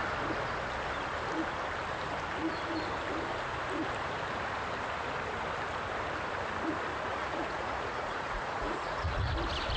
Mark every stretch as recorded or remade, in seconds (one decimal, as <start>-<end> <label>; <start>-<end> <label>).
0.0-7.1 recorded; 7.1-9.3 remade; 9.3-9.8 recorded